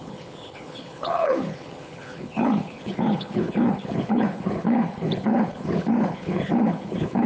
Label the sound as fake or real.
fake